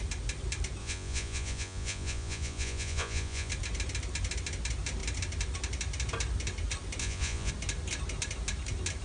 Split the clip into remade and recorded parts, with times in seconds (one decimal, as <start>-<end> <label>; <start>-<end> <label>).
0.0-0.8 recorded; 0.8-3.5 remade; 3.5-7.0 recorded; 7.0-7.5 remade; 7.5-9.0 recorded